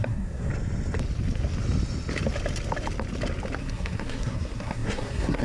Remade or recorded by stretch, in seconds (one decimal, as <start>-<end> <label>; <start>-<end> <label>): 0.0-0.5 remade; 0.5-3.6 recorded; 3.6-5.4 remade